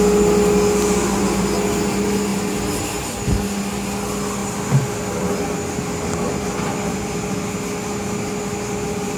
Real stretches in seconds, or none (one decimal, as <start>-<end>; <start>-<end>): 0.0-2.3; 2.8-4.4; 5.3-9.2